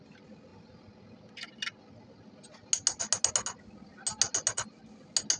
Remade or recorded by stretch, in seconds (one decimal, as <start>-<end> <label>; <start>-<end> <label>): 0.0-5.4 recorded